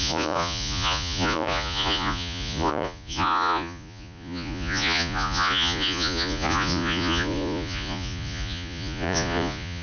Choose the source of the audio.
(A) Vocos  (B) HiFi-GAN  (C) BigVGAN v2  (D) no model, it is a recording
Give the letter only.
A